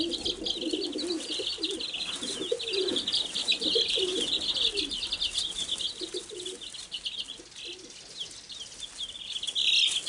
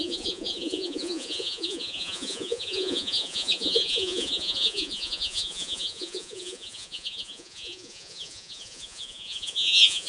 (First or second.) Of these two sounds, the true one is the first